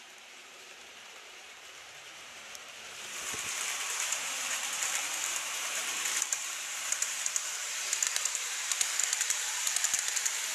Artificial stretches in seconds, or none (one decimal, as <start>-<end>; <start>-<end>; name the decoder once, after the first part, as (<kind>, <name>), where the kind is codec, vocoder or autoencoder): 0.0-10.5 (vocoder, BigVGAN v2)